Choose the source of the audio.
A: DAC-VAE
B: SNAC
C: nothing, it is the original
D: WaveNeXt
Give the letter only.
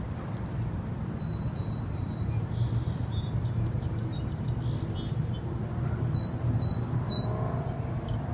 C